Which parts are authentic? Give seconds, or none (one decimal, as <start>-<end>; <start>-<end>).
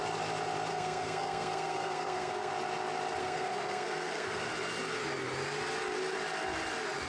0.0-0.7; 2.5-3.2; 4.5-7.1